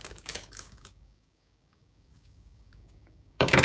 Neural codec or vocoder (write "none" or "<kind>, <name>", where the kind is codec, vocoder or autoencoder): codec, DAC